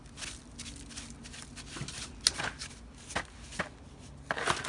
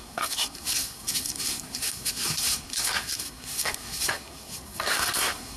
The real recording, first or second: first